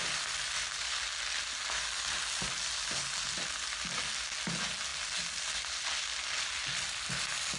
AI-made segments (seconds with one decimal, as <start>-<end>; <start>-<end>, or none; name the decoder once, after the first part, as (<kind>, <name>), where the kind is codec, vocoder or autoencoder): none